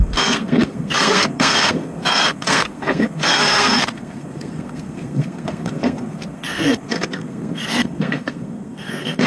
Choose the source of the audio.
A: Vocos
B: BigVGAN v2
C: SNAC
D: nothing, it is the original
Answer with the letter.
C